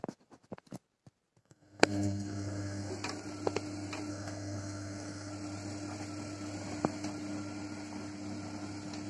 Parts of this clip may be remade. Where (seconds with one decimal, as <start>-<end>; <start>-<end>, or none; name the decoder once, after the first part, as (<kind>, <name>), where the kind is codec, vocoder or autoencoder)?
1.4-2.9 (codec, SNAC); 4.1-5.3